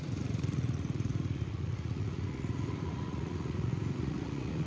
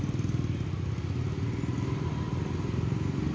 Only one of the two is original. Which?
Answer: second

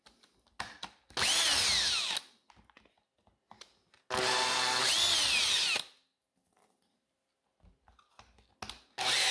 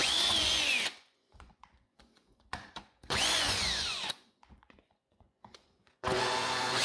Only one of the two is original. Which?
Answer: first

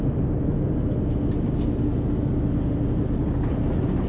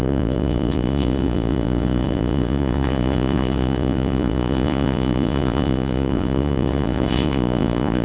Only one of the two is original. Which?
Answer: first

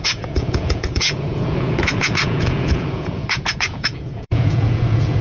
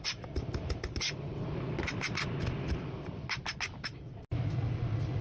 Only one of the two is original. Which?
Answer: second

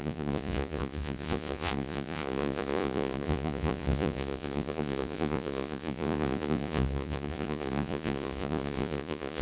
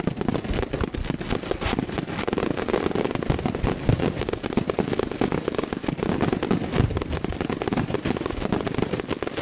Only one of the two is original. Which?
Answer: second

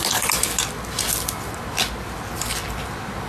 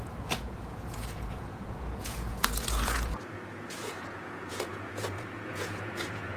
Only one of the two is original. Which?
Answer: first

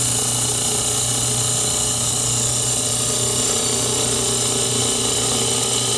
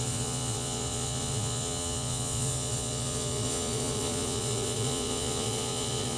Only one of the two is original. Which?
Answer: first